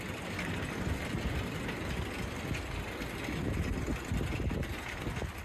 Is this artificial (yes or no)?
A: no